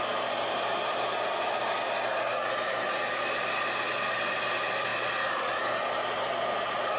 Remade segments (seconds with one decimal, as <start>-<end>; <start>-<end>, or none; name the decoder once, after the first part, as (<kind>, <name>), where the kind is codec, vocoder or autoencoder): none